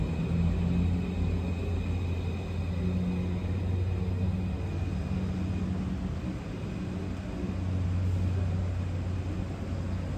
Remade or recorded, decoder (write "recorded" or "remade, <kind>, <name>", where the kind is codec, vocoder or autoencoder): recorded